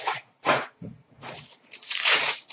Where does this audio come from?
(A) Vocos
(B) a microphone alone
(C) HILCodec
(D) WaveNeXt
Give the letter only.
A